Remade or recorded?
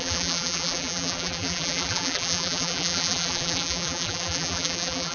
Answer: remade